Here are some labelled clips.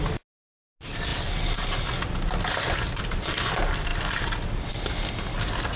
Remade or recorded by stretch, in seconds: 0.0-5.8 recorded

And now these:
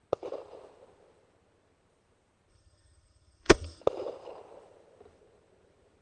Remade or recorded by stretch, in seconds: 0.0-2.5 recorded; 2.5-3.8 remade; 3.8-6.0 recorded